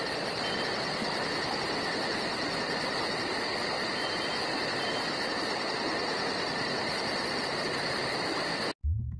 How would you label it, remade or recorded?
recorded